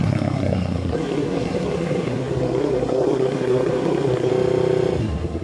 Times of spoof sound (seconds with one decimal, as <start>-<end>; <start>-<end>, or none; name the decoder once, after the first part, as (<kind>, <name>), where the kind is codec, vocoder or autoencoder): 0.0-4.3 (codec, SNAC); 5.0-5.4